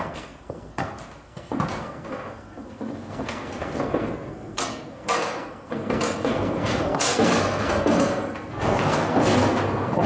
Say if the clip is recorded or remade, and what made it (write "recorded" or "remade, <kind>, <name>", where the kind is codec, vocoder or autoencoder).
remade, codec, SNAC